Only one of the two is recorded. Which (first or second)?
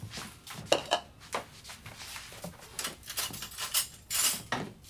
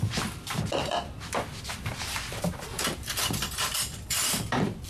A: first